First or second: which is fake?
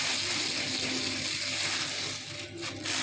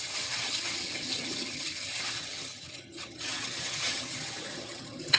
second